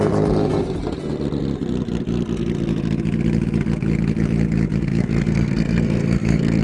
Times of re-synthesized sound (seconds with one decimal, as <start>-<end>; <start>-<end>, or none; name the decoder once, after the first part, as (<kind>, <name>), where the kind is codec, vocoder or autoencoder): 4.8-6.6 (codec, SNAC)